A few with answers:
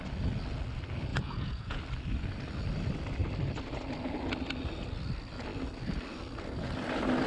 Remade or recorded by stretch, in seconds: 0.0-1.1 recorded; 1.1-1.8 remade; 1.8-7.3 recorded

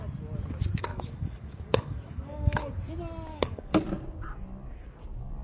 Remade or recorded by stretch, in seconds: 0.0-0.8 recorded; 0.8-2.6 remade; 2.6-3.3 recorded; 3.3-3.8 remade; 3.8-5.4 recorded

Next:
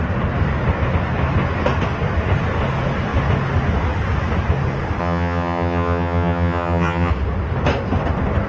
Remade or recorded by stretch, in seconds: 0.0-5.0 recorded; 5.0-7.1 remade; 7.1-8.5 recorded

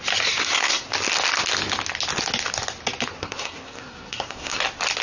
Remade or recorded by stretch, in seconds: 0.0-0.4 recorded; 0.4-0.9 remade; 0.9-3.1 recorded; 3.1-4.6 remade; 4.6-5.0 recorded

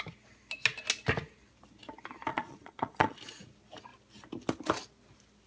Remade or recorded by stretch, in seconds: 0.0-2.3 recorded; 2.3-3.2 remade; 3.2-5.5 recorded

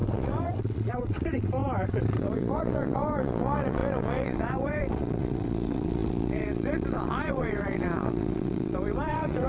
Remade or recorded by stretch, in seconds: 0.0-9.5 remade